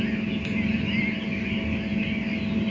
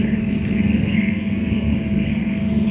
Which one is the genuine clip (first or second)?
first